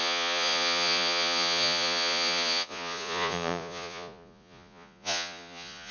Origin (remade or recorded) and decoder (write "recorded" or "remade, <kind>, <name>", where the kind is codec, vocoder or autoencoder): remade, vocoder, Vocos